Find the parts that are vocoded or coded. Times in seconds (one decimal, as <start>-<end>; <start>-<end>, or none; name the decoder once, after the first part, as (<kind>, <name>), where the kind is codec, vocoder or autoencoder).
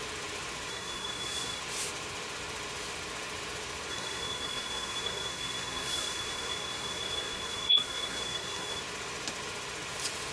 0.7-1.6 (codec, SNAC); 3.9-8.8